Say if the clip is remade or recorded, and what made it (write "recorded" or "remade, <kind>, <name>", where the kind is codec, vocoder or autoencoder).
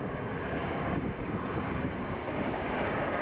remade, codec, DAC